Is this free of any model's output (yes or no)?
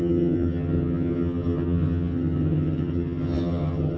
no